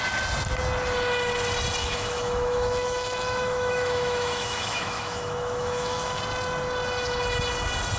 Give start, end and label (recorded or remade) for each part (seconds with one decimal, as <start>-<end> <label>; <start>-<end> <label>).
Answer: 0.0-1.8 recorded; 1.8-6.2 remade; 6.2-8.0 recorded